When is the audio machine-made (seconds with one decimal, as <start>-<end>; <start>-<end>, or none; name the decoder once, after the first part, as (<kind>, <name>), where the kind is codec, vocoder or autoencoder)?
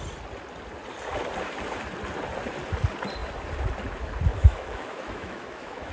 4.3-5.9 (autoencoder, DAC-VAE)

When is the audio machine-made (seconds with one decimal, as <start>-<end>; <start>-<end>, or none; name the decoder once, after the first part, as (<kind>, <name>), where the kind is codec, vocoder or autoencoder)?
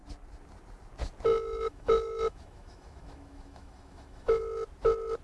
1.3-4.4 (autoencoder, DAC-VAE)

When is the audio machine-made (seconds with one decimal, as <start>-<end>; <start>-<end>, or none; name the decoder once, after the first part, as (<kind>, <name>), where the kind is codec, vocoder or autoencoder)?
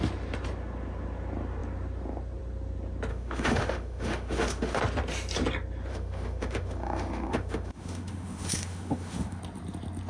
3.1-4.8 (autoencoder, DAC-VAE); 5.9-9.4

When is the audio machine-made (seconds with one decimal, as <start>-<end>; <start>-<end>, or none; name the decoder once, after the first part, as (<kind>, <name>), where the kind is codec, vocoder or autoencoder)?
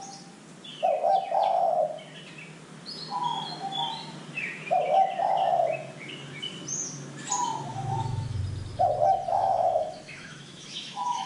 7.7-8.4 (autoencoder, DAC-VAE); 9.3-11.3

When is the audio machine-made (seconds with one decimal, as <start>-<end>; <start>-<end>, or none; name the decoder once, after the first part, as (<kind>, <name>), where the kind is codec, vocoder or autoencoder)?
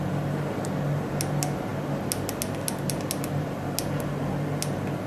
none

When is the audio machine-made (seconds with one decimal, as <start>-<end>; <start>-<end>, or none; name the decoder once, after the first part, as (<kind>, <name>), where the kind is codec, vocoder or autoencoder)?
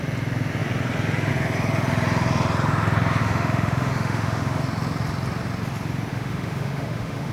3.2-4.6 (autoencoder, DAC-VAE); 6.1-7.3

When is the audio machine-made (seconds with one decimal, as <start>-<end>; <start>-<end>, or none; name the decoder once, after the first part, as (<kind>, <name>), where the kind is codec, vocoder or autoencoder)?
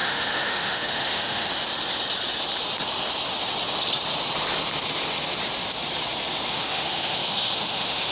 0.0-1.6 (autoencoder, DAC-VAE); 6.5-8.1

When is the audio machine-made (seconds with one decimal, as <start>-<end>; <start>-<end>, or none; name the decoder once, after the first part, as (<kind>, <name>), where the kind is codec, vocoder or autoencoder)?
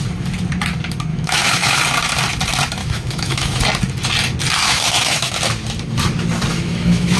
1.1-1.8 (autoencoder, DAC-VAE); 2.8-3.6; 4.6-5.3; 6.5-7.2